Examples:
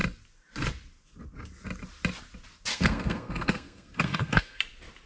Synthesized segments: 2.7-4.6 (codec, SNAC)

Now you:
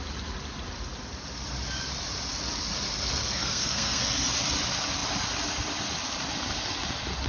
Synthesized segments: 3.2-4.0 (codec, SNAC)

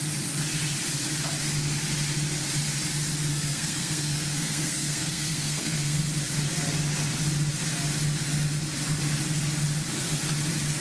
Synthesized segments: 3.3-6.0 (codec, SNAC)

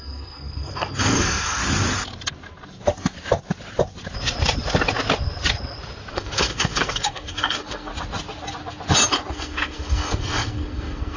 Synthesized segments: 0.0-1.6 (codec, SNAC); 6.1-7.9; 9.3-11.2

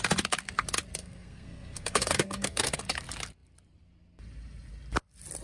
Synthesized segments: 1.0-2.8 (codec, SNAC)

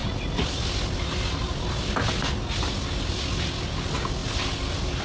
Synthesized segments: none

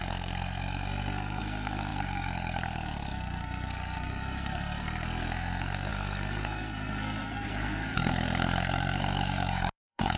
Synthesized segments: 0.0-10.2 (codec, SNAC)

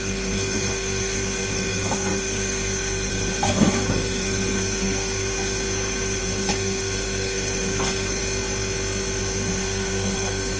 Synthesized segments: 0.0-8.2 (codec, SNAC); 9.2-10.6